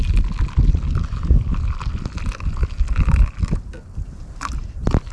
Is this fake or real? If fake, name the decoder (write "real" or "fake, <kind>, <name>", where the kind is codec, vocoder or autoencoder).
real